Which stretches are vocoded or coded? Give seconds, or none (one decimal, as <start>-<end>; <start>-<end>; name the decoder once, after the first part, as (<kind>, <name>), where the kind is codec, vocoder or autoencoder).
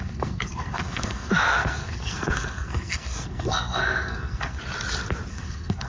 0.0-4.6 (codec, SNAC); 5.3-5.9